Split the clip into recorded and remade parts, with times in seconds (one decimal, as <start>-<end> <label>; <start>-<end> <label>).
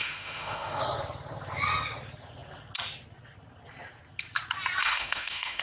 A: 0.0-0.8 remade; 0.8-4.8 recorded; 4.8-5.6 remade